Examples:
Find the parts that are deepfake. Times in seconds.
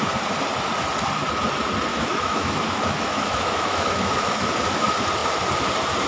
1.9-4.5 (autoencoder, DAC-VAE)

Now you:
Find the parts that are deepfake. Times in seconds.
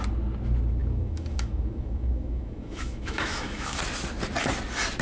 0.8-3.8 (autoencoder, DAC-VAE)